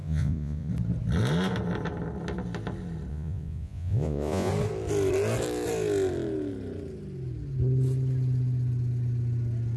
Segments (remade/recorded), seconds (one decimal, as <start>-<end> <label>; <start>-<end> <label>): 0.0-0.7 remade; 0.7-3.1 recorded; 3.1-4.5 remade; 4.5-9.8 recorded